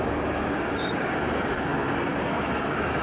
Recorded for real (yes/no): no